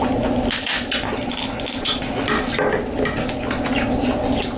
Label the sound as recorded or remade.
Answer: recorded